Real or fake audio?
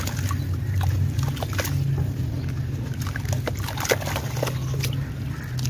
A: real